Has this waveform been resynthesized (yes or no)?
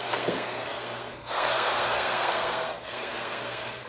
yes